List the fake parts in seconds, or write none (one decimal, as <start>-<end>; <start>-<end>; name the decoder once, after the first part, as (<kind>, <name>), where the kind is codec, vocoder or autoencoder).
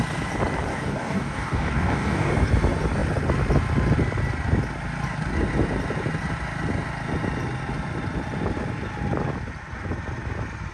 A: 0.7-2.3 (codec, DAC)